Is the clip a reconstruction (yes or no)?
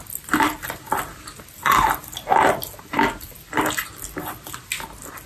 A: no